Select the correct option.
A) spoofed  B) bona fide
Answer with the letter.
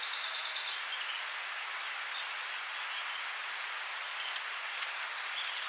B